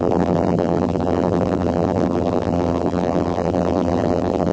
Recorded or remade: remade